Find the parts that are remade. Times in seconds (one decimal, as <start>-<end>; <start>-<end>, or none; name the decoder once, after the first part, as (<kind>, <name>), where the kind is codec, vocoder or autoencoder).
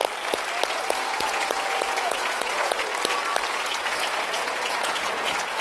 0.7-2.9 (vocoder, Vocos); 3.5-5.6